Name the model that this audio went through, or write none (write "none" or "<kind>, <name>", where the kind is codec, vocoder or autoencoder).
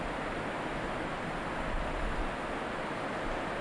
none